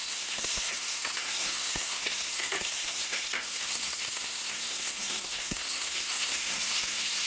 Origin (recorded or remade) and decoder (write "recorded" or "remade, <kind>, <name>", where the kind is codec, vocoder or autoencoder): remade, codec, SNAC